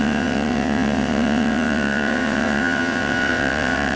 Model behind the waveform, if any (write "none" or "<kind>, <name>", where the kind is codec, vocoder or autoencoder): vocoder, WaveNeXt